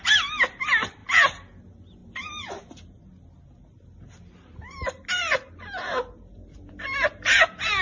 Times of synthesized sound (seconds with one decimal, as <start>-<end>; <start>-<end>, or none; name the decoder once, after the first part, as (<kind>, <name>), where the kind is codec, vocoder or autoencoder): none